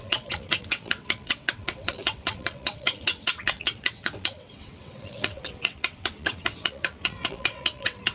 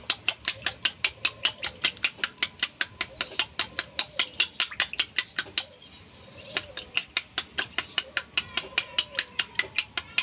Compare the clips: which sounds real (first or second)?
second